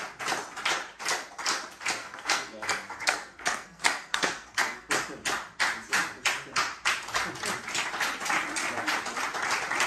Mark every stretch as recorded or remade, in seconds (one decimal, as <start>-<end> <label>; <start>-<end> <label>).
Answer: 0.0-2.0 recorded; 2.0-4.9 remade; 4.9-9.9 recorded